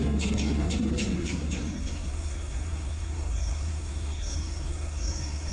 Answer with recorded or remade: remade